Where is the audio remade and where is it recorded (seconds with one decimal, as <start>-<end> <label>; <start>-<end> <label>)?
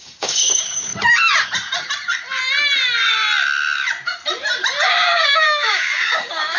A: 0.0-0.9 remade; 0.9-4.9 recorded; 4.9-6.6 remade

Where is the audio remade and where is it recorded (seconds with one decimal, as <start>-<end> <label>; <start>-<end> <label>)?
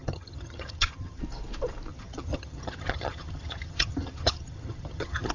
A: 0.0-1.2 remade; 1.2-1.9 recorded; 1.9-5.3 remade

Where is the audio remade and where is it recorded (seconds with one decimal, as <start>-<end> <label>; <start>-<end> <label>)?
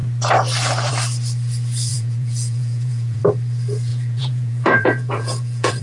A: 0.0-1.9 recorded; 1.9-3.2 remade; 3.2-3.9 recorded; 3.9-5.8 remade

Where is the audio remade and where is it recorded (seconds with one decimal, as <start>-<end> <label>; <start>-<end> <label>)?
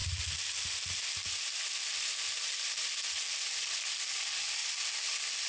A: 0.0-5.5 recorded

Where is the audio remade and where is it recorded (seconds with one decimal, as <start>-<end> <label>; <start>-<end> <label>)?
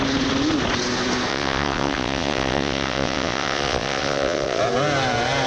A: 0.0-1.3 recorded; 1.3-4.6 remade; 4.6-5.5 recorded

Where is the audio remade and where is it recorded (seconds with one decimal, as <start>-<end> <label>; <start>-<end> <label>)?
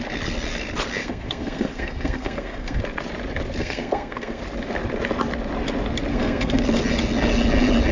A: 0.0-1.0 recorded; 1.0-2.8 remade; 2.8-3.6 recorded; 3.6-4.4 remade; 4.4-6.1 recorded; 6.1-6.6 remade; 6.6-7.9 recorded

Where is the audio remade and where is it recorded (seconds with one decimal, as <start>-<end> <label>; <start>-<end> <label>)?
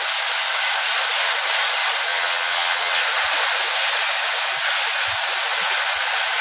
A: 0.0-2.1 recorded; 2.1-3.0 remade; 3.0-6.4 recorded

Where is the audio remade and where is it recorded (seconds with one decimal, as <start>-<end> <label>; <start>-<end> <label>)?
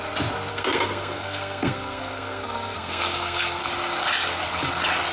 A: 0.0-0.5 recorded; 0.5-3.6 remade; 3.6-5.1 recorded